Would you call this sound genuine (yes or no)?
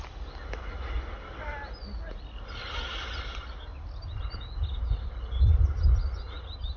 yes